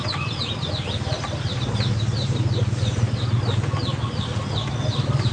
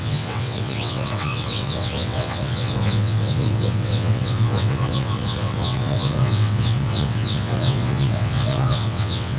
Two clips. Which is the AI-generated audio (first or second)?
second